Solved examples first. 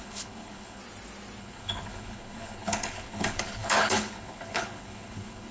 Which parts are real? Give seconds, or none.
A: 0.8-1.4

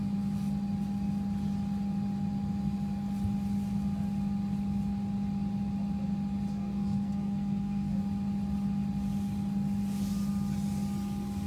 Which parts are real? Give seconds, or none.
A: 0.0-6.5; 8.0-11.5

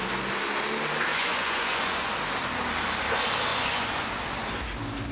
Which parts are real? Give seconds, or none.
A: 0.0-1.1; 2.1-3.5; 4.1-5.1

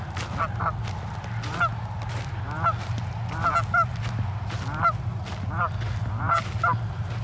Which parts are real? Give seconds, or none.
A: 0.0-7.2

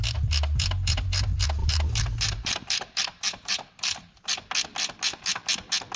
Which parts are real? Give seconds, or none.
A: 0.0-1.6; 4.3-6.0